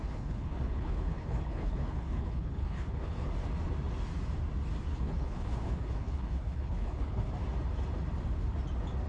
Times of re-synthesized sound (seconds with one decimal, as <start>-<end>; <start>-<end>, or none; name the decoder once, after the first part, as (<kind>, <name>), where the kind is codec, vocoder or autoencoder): 0.0-3.3 (codec, HILCodec); 4.9-7.3